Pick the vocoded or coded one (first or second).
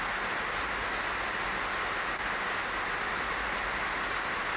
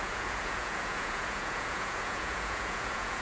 second